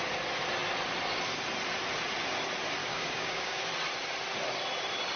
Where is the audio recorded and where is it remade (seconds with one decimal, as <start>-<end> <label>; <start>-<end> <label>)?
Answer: 0.0-2.8 recorded; 2.8-3.6 remade; 3.6-5.2 recorded

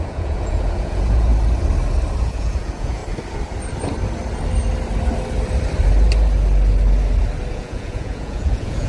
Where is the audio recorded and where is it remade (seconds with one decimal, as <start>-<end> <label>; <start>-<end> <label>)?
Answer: 0.0-1.3 remade; 1.3-2.2 recorded; 2.2-3.0 remade; 3.0-7.5 recorded; 7.5-8.9 remade

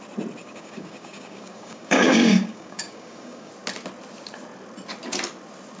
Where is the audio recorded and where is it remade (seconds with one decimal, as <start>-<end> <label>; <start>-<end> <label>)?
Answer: 0.0-0.4 recorded; 0.4-3.5 remade; 3.5-5.8 recorded

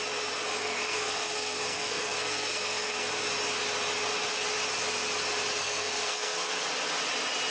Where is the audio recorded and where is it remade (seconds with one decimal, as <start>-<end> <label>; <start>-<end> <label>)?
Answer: 0.0-0.6 recorded; 0.6-3.1 remade; 3.1-5.6 recorded; 5.6-6.6 remade; 6.6-7.5 recorded

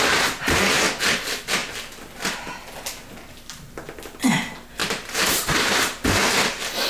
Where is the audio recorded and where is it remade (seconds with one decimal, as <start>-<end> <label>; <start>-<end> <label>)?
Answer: 0.0-6.9 recorded

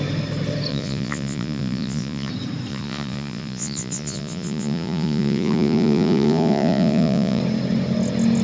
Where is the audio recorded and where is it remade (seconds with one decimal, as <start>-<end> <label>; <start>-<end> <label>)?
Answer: 0.0-0.7 recorded; 0.7-2.3 remade; 2.3-2.7 recorded; 2.7-7.4 remade; 7.4-8.4 recorded